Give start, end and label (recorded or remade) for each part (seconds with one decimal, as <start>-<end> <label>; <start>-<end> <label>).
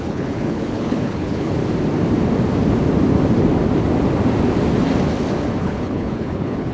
0.0-1.6 remade; 1.6-5.6 recorded; 5.6-6.7 remade